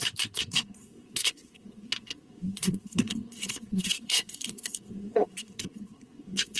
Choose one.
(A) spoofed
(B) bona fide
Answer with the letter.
A